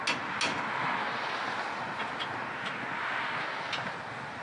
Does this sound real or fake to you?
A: real